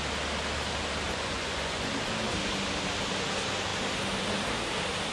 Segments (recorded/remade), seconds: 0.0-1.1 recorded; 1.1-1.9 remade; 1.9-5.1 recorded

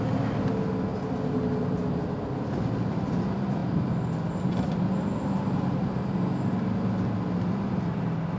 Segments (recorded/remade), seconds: 0.0-8.4 recorded